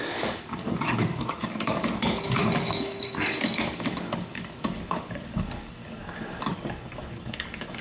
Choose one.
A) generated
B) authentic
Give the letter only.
A